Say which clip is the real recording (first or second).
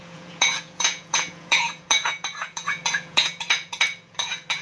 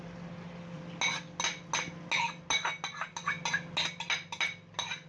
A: second